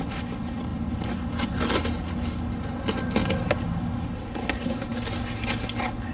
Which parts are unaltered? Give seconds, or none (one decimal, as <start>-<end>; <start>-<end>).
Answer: 0.0-6.1